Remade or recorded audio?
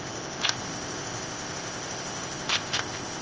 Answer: remade